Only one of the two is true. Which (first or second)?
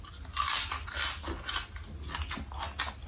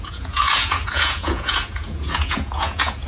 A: first